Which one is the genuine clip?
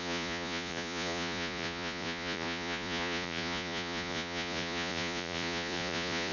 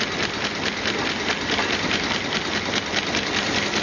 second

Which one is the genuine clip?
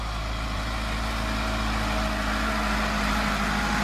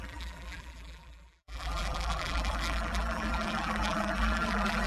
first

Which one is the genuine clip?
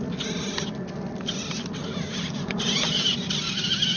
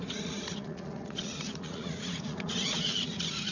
first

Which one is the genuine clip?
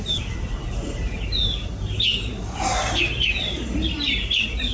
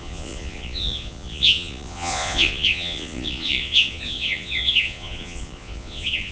first